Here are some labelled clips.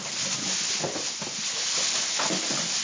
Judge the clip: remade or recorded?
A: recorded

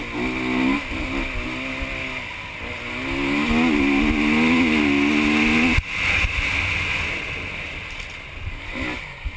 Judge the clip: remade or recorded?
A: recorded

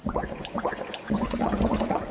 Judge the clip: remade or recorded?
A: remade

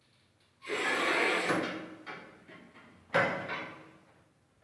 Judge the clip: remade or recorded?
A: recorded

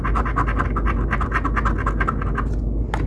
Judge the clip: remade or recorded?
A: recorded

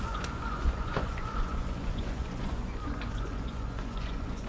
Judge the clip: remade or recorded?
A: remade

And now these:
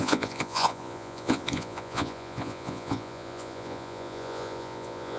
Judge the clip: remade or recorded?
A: remade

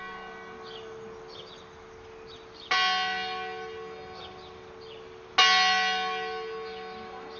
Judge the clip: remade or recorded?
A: recorded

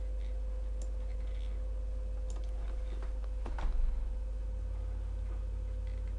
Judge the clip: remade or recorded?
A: recorded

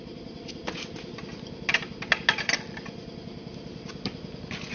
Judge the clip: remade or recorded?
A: recorded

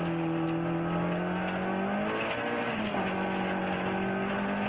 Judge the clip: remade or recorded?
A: recorded